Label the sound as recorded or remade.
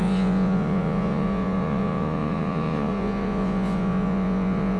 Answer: remade